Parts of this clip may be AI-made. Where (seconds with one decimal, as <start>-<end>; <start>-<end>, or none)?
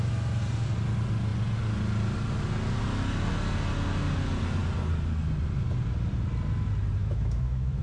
7.0-7.8